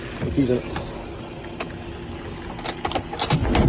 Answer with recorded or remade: recorded